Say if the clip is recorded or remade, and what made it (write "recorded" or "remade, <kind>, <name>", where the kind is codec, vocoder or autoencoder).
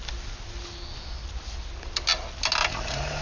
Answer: recorded